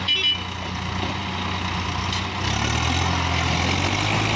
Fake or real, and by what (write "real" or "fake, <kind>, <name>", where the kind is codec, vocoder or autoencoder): real